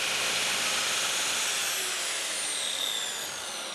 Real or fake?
real